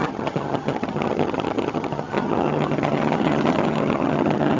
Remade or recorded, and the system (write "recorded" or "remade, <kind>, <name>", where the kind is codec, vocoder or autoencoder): remade, vocoder, HiFi-GAN